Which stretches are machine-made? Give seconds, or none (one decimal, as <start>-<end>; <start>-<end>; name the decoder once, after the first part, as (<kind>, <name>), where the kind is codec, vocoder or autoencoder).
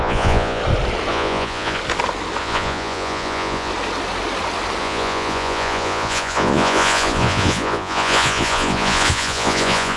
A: 0.0-0.6 (vocoder, Vocos); 1.1-1.8; 2.4-3.7; 4.8-10.0